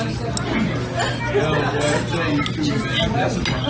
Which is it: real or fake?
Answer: real